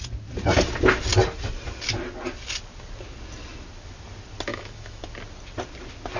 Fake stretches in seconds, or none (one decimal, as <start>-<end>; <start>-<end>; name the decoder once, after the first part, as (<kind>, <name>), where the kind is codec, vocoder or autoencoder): 4.5-5.0 (autoencoder, DAC-VAE)